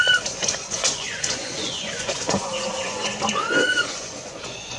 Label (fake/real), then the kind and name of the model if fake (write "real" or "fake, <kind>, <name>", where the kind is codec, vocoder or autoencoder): fake, vocoder, Vocos